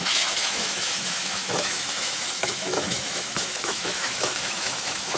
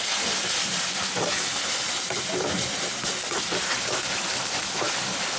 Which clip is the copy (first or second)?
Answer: first